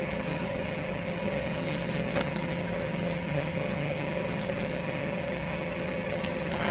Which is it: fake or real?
fake